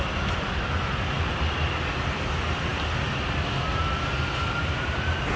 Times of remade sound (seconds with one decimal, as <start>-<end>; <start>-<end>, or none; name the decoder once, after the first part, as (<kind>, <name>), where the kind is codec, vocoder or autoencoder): none